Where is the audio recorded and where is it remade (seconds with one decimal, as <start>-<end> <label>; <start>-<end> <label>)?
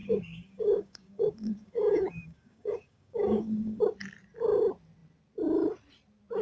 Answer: 0.0-3.8 remade; 3.8-6.4 recorded